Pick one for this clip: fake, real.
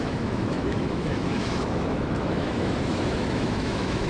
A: fake